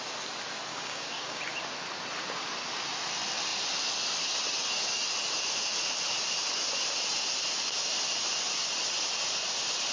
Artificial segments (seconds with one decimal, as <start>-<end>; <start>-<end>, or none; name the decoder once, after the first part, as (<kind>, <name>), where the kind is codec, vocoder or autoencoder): 0.7-1.4 (codec, DAC)